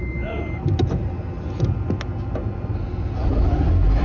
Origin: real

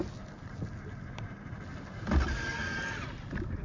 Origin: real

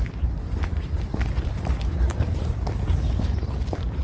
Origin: real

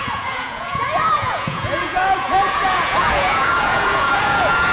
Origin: fake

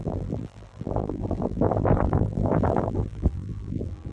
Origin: fake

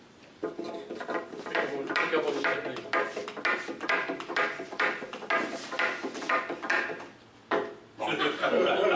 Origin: real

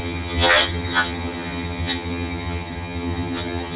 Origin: fake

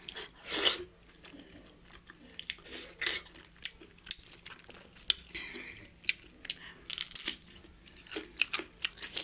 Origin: real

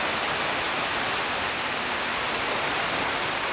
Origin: real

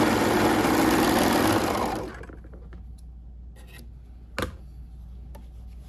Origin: real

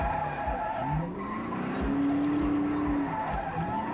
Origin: real